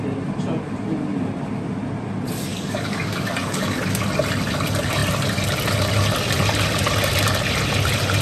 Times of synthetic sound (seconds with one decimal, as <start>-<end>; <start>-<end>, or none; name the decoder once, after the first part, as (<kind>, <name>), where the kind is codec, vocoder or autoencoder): 2.5-4.0 (codec, DAC)